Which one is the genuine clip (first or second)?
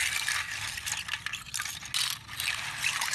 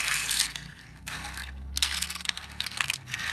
first